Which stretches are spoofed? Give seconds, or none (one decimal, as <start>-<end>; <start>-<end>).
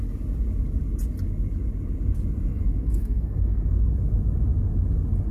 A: 2.5-3.6